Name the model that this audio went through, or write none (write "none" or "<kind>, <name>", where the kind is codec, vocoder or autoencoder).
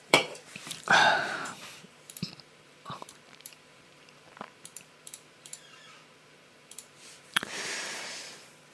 vocoder, BigVGAN v2